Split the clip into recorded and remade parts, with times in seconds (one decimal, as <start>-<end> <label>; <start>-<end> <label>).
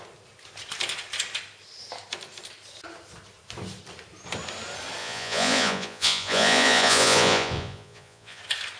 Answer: 0.0-5.0 recorded; 5.0-8.4 remade; 8.4-8.8 recorded